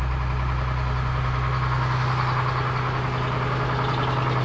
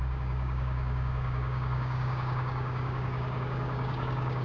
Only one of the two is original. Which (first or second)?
first